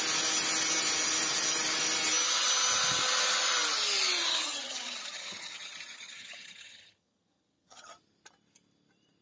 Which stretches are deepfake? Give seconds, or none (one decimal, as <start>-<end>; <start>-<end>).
4.3-7.9